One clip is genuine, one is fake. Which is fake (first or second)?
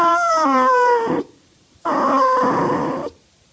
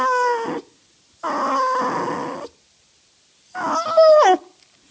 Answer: first